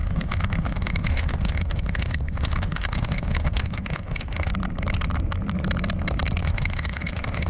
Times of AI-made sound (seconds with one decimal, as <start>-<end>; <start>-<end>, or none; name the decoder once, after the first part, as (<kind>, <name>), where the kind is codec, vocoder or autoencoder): 0.0-4.5 (autoencoder, DAC-VAE); 6.4-7.5